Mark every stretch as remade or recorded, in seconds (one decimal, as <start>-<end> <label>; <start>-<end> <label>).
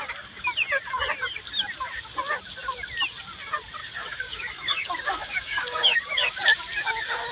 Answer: 0.0-3.8 recorded; 3.8-6.3 remade; 6.3-7.3 recorded